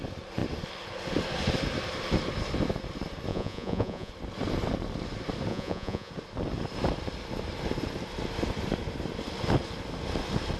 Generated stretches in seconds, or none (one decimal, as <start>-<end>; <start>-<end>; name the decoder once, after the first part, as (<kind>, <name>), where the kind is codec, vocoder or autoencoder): 3.3-4.1 (vocoder, Vocos); 5.5-6.1